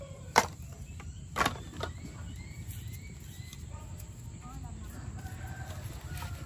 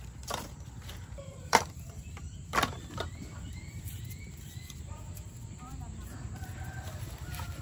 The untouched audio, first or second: first